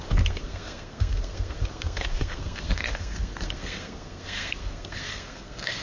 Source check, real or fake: fake